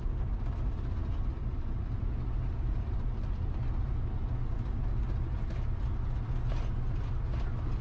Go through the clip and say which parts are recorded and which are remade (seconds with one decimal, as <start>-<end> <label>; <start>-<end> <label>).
0.0-7.8 recorded

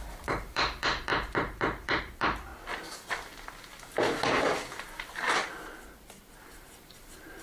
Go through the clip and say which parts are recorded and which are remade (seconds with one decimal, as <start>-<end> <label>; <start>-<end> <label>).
0.0-2.5 remade; 2.5-4.8 recorded; 4.8-5.4 remade; 5.4-6.4 recorded; 6.4-7.4 remade

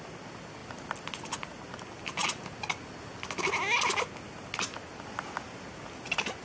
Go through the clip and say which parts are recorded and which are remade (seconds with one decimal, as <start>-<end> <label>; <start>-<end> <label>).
0.0-6.4 recorded

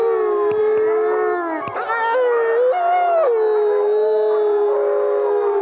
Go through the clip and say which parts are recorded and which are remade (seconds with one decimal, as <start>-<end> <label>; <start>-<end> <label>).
0.0-5.6 recorded